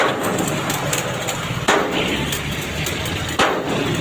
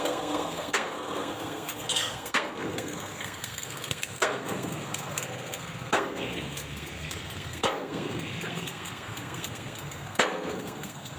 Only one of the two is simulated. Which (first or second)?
second